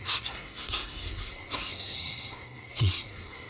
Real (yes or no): no